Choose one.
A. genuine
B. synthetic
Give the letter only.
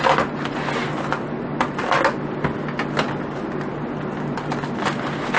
A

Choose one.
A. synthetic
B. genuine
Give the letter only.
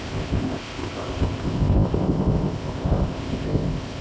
A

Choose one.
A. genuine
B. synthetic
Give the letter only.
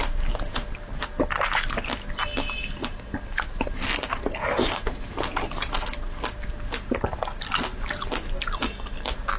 A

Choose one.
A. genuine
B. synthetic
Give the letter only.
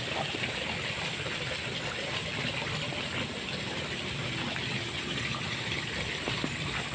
A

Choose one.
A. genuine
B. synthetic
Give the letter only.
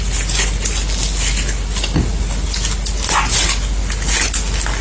A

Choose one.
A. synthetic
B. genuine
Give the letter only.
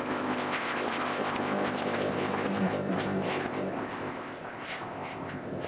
A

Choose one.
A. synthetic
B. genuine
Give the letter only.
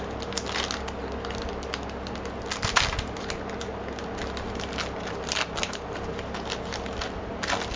B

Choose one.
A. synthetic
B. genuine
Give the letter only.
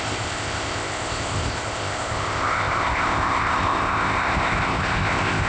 A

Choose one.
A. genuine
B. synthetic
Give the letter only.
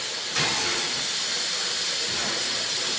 A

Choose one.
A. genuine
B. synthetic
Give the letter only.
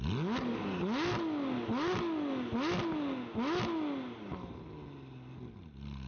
A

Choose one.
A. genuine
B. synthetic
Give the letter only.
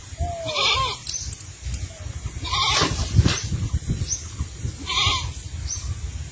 A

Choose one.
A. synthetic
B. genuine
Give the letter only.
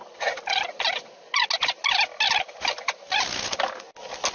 B